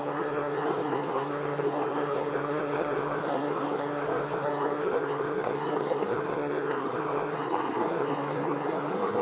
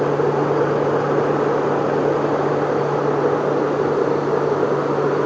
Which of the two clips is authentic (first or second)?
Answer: second